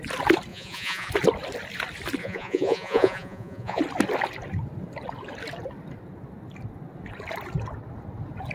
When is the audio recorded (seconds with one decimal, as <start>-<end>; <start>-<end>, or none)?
0.0-0.5; 1.1-2.2; 3.8-8.5